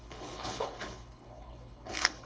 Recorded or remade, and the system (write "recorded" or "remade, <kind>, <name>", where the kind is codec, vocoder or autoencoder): remade, codec, HILCodec